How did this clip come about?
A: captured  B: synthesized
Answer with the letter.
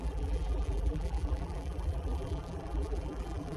B